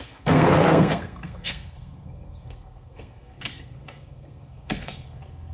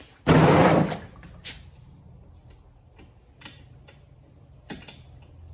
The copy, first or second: first